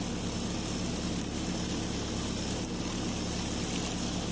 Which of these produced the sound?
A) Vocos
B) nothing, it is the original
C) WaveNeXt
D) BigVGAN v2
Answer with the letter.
B